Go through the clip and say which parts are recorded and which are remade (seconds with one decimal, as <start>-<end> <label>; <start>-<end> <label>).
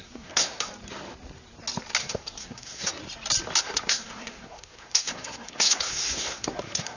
0.0-0.7 remade; 0.7-2.0 recorded; 2.0-3.0 remade; 3.0-3.6 recorded; 3.6-7.0 remade